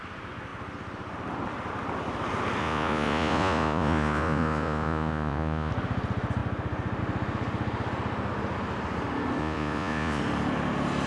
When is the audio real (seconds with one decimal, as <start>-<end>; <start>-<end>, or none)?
0.0-2.6; 5.7-9.4; 10.2-11.1